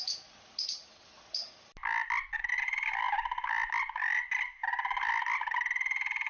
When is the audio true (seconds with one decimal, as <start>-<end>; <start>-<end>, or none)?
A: 0.0-6.3